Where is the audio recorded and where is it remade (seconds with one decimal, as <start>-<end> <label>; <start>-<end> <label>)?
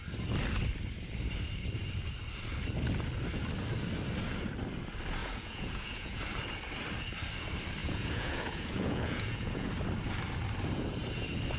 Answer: 0.0-5.2 recorded; 5.2-6.2 remade; 6.2-7.8 recorded; 7.8-9.7 remade; 9.7-11.6 recorded